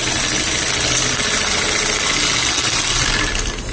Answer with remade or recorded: recorded